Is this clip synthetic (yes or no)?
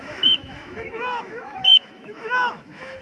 yes